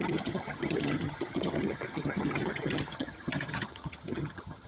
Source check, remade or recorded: remade